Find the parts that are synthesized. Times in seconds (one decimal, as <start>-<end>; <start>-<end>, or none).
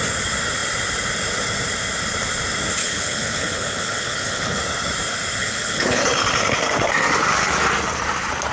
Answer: 2.8-4.6; 5.4-6.0